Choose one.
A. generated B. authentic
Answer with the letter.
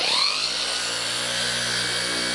B